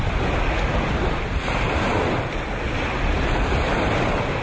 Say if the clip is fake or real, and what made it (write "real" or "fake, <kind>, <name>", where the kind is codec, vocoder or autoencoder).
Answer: real